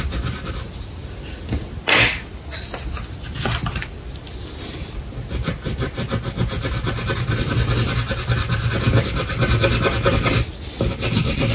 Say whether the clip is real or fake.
real